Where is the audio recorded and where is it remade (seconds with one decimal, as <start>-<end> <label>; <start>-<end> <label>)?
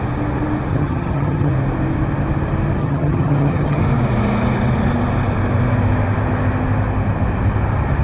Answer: 0.0-0.7 recorded; 0.7-1.5 remade; 1.5-2.8 recorded; 2.8-3.8 remade; 3.8-8.0 recorded